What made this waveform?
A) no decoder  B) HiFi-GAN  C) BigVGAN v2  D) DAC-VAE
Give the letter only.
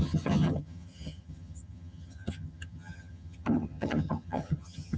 B